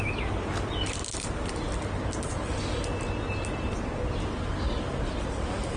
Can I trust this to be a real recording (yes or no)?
yes